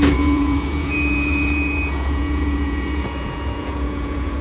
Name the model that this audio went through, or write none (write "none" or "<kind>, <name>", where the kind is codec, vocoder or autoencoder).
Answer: vocoder, Vocos